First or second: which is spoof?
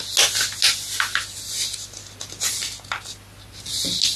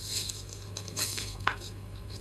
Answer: second